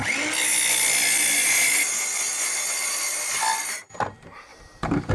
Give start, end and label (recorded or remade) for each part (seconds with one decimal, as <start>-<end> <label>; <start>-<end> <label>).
0.0-5.1 recorded